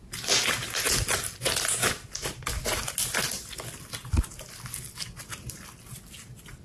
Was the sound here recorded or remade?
recorded